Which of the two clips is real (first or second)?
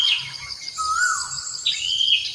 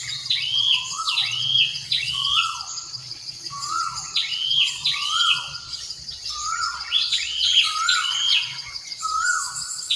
first